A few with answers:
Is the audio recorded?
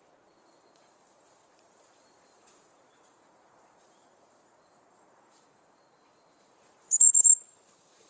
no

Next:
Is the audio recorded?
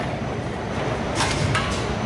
yes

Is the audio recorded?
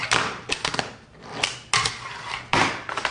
yes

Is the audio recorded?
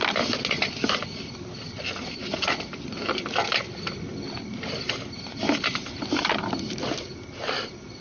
yes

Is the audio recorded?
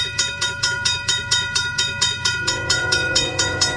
no